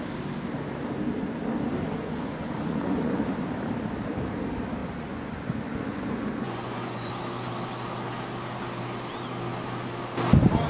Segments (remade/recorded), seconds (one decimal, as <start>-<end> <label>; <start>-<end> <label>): 0.0-2.0 recorded; 2.0-3.2 remade; 3.2-4.8 recorded; 4.8-7.1 remade; 7.1-10.7 recorded

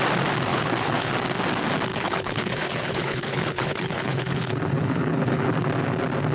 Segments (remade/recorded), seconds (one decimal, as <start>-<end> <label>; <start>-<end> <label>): 0.0-0.5 recorded; 0.5-1.1 remade; 1.1-1.9 recorded; 1.9-5.5 remade; 5.5-6.3 recorded

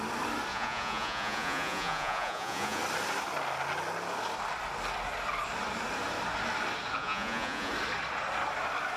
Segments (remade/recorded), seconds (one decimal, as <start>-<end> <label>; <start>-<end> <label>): 0.0-0.5 recorded; 0.5-2.8 remade; 2.8-7.0 recorded; 7.0-7.7 remade; 7.7-9.0 recorded

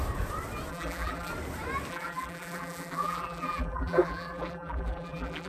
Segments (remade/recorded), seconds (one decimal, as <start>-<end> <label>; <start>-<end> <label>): 0.0-0.7 recorded; 0.7-1.3 remade; 1.3-1.9 recorded; 1.9-5.5 remade

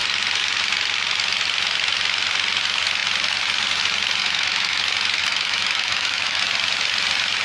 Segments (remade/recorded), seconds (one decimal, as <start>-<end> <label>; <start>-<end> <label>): 0.0-4.2 recorded; 4.2-4.8 remade; 4.8-5.2 recorded; 5.2-6.4 remade; 6.4-7.4 recorded

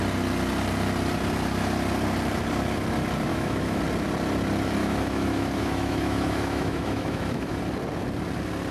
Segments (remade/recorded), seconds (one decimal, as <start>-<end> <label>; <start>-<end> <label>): 0.0-3.3 recorded; 3.3-3.8 remade; 3.8-4.8 recorded; 4.8-7.6 remade; 7.6-8.7 recorded